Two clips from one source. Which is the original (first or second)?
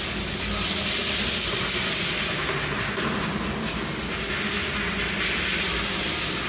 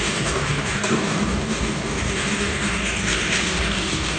first